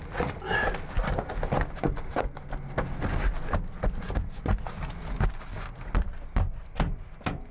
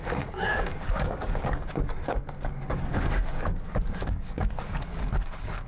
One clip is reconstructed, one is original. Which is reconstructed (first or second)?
second